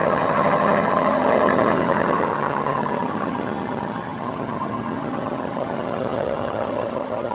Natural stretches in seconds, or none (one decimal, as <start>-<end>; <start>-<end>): none